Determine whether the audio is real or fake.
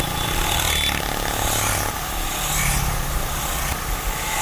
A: real